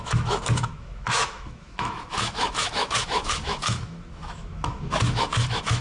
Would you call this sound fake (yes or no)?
yes